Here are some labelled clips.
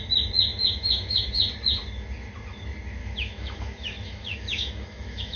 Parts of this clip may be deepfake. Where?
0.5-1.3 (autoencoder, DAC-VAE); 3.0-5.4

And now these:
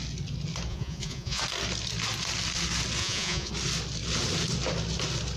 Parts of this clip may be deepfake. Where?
0.7-1.4 (vocoder, Vocos); 3.0-3.5

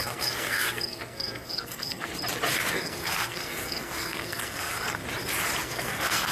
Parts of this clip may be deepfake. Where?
0.0-2.1 (codec, SNAC); 2.7-5.0; 5.6-6.3

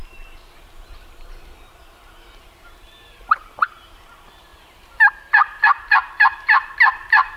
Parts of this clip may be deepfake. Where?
1.7-4.5 (vocoder, BigVGAN v2); 5.1-7.4

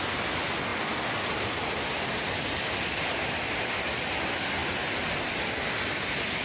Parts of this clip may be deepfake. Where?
none

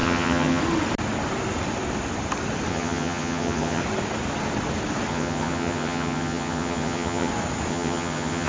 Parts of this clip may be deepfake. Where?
0.0-0.6 (vocoder, HiFi-GAN); 2.7-3.8; 5.1-7.3; 7.7-8.5